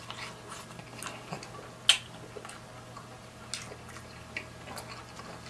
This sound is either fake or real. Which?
real